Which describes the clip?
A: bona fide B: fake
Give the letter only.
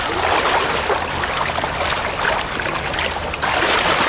A